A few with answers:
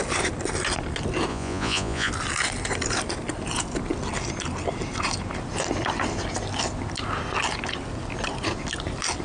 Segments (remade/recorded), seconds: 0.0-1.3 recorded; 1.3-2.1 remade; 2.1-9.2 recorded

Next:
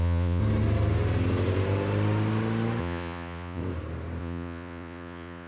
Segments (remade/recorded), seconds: 0.0-0.4 remade; 0.4-2.8 recorded; 2.8-3.6 remade; 3.6-4.2 recorded; 4.2-5.5 remade

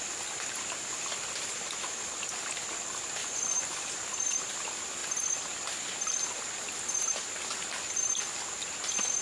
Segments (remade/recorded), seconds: 0.0-3.2 recorded; 3.2-3.7 remade; 3.7-9.2 recorded

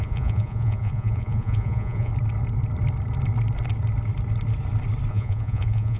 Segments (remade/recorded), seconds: 0.0-2.1 remade; 2.1-5.1 recorded; 5.1-6.0 remade

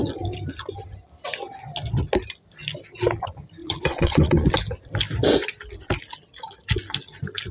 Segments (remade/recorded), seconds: 0.0-3.6 recorded; 3.6-4.5 remade; 4.5-7.5 recorded

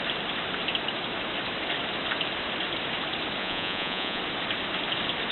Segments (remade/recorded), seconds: 0.0-3.4 recorded; 3.4-4.2 remade; 4.2-5.3 recorded

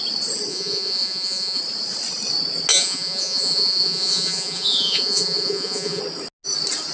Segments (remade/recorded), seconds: 0.0-0.5 recorded; 0.5-1.6 remade; 1.6-2.7 recorded; 2.7-6.0 remade; 6.0-6.9 recorded